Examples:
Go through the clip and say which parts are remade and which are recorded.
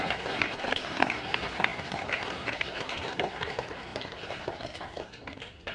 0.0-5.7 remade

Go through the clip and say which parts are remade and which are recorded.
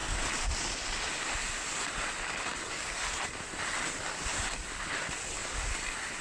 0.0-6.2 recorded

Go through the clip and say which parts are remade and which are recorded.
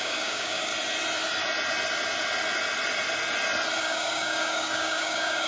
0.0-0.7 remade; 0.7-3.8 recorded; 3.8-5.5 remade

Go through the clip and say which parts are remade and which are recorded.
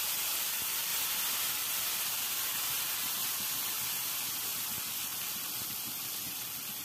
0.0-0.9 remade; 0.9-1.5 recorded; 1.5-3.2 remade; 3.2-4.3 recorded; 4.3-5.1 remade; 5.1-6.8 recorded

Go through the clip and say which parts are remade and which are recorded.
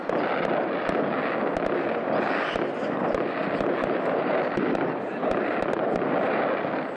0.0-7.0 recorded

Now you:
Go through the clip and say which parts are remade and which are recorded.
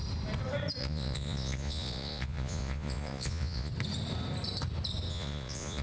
0.0-0.8 recorded; 0.8-3.7 remade; 3.7-5.1 recorded; 5.1-5.8 remade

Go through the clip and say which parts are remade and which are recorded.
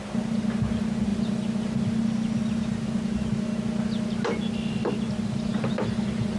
0.0-6.4 recorded